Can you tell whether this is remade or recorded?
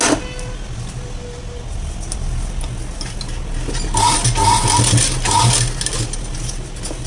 recorded